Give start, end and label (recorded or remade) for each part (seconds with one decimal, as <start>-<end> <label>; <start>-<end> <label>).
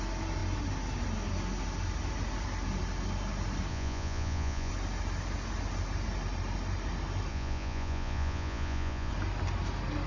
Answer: 0.0-3.7 recorded; 3.7-4.7 remade; 4.7-7.3 recorded; 7.3-9.1 remade; 9.1-10.1 recorded